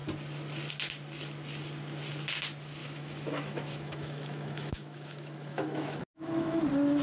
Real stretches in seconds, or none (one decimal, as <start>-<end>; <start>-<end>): 0.0-2.8; 6.6-7.0